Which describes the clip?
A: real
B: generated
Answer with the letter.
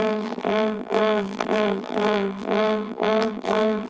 B